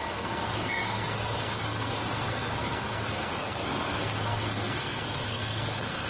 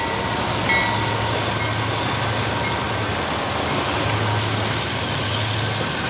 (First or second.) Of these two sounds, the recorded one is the second